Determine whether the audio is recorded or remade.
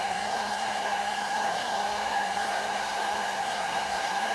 remade